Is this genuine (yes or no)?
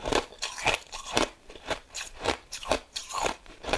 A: no